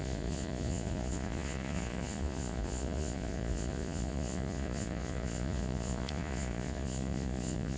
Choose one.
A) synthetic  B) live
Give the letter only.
A